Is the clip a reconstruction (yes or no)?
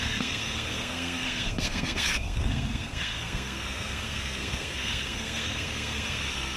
yes